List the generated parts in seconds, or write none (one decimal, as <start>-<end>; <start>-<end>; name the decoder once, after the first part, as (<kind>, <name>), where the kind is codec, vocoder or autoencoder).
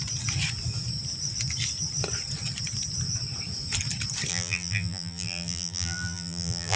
4.3-6.8 (vocoder, BigVGAN v2)